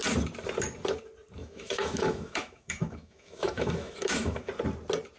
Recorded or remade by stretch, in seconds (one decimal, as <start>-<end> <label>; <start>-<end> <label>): 0.0-1.4 recorded; 1.4-4.5 remade; 4.5-5.2 recorded